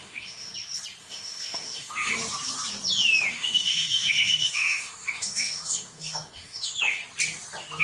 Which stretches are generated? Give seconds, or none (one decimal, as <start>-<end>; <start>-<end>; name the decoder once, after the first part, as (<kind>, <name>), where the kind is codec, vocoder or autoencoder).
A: 0.0-0.5 (autoencoder, DAC-VAE); 1.0-2.2; 3.3-7.0